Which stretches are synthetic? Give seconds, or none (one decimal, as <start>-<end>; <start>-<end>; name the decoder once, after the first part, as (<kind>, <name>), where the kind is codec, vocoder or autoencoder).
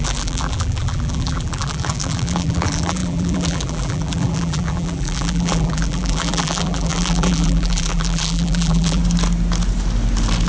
0.0-9.0 (vocoder, BigVGAN v2)